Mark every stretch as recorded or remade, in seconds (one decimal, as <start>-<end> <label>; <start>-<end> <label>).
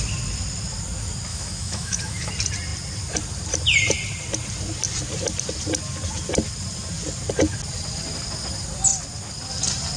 0.0-1.3 recorded; 1.3-2.3 remade; 2.3-10.0 recorded